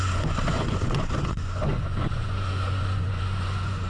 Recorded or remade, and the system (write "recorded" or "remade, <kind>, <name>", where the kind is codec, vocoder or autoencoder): remade, vocoder, Vocos